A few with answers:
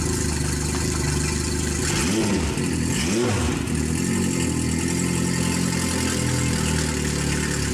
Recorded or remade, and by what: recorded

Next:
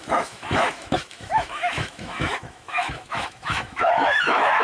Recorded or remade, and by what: remade, autoencoder, DAC-VAE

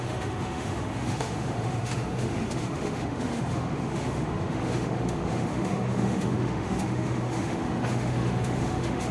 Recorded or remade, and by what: remade, autoencoder, DAC-VAE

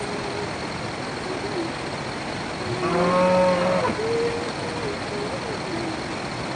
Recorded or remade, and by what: recorded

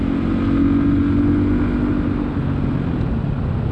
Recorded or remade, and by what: recorded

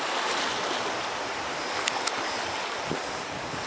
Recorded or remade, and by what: recorded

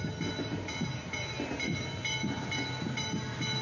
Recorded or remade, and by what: recorded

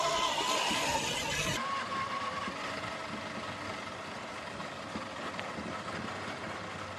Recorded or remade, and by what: recorded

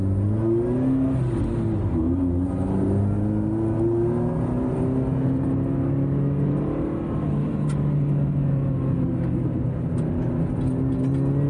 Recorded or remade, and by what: recorded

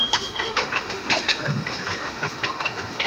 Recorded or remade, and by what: remade, autoencoder, DAC-VAE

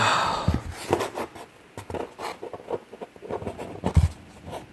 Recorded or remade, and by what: recorded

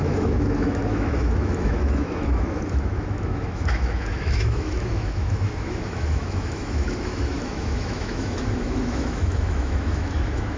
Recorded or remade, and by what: remade, autoencoder, DAC-VAE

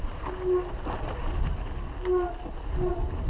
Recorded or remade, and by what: recorded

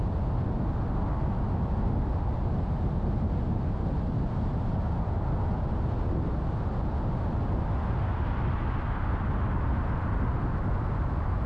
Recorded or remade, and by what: recorded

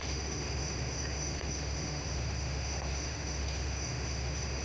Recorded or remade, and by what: remade, autoencoder, DAC-VAE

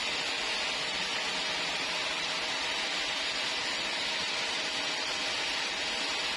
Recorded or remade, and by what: recorded